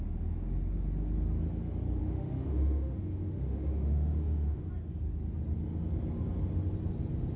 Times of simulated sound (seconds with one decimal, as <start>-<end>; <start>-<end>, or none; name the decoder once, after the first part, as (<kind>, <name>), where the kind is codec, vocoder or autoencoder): 2.0-4.7 (autoencoder, DAC-VAE)